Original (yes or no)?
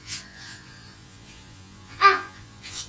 no